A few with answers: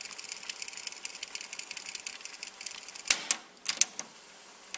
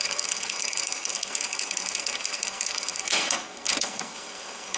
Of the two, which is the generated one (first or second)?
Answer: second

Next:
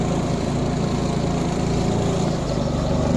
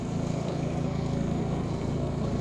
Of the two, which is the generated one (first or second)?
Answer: second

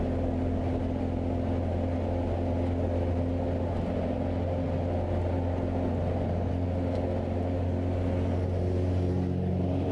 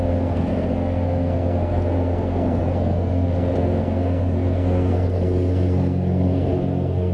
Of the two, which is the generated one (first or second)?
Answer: second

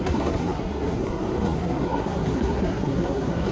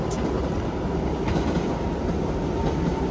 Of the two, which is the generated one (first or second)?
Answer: first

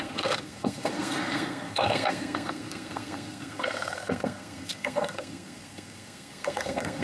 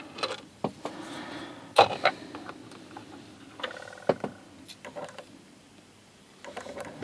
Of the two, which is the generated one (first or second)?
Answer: first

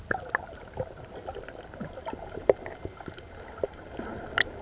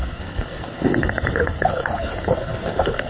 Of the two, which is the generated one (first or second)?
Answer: second